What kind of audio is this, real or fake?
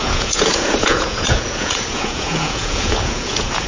fake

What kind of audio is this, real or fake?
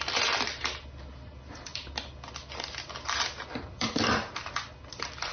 real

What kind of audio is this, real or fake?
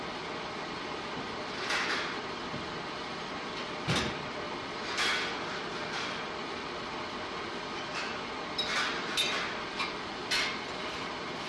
fake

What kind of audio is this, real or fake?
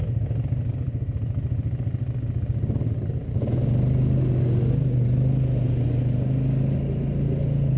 real